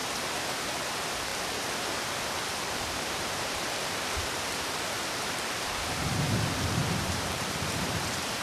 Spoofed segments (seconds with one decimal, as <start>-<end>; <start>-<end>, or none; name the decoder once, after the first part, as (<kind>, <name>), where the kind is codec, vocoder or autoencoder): 0.9-1.3 (vocoder, BigVGAN v2); 2.6-8.4